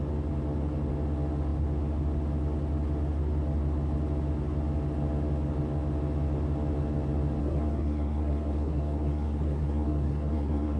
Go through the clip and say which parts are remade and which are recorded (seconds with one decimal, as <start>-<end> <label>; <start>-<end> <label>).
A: 0.0-7.4 recorded; 7.4-10.8 remade